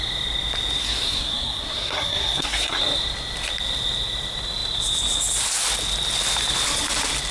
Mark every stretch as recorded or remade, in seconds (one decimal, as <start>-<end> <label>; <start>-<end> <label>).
0.0-0.8 recorded; 0.8-2.8 remade; 2.8-7.3 recorded